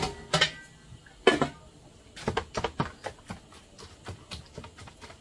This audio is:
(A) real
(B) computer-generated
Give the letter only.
A